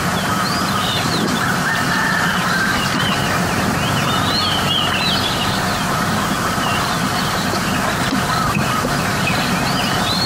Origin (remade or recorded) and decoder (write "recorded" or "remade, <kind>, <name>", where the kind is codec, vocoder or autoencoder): remade, vocoder, BigVGAN v2